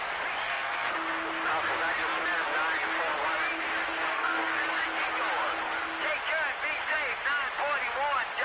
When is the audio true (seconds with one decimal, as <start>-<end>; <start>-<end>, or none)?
0.0-0.4; 0.9-4.1; 4.6-8.4